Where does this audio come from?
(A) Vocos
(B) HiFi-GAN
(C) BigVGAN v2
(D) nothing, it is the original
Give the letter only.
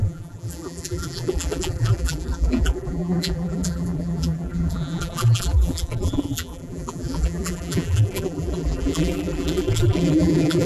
C